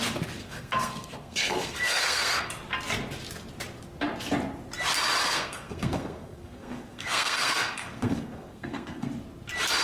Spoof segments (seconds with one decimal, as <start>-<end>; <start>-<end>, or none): 0.4-2.4; 5.2-9.1